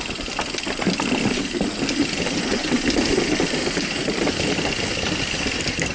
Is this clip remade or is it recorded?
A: recorded